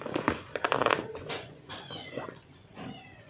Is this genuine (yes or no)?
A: no